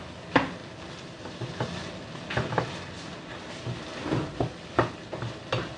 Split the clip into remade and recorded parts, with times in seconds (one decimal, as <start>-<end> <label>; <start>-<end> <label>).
0.0-5.8 recorded